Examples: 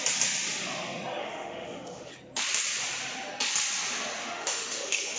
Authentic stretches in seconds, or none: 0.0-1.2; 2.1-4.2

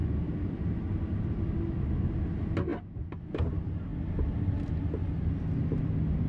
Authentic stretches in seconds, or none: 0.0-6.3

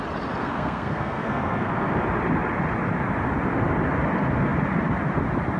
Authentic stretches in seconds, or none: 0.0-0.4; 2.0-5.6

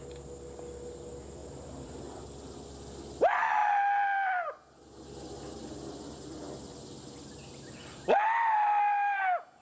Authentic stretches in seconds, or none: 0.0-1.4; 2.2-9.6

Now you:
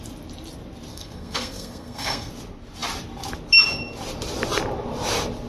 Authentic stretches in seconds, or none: 0.0-0.9; 2.3-5.5

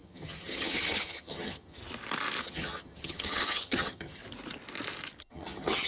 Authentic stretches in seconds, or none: 1.8-2.4; 4.2-5.2